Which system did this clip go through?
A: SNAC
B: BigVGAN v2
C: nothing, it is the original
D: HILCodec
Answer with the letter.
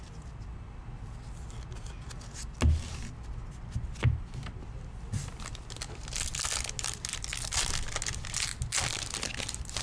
C